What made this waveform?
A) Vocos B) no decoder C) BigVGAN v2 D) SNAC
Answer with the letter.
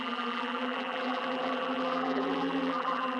C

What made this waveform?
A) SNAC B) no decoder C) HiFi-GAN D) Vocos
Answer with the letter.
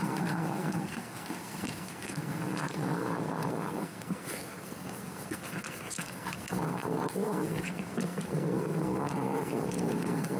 A